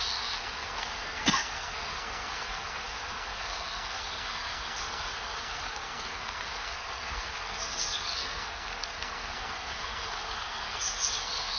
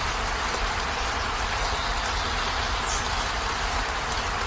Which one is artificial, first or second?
first